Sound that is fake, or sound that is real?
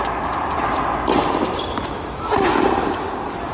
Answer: real